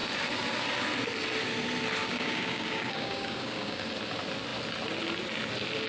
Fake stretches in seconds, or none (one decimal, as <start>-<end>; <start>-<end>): 2.0-3.8